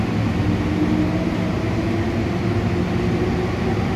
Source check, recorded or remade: recorded